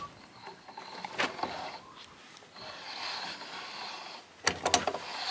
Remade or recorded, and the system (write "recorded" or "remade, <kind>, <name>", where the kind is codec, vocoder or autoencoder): recorded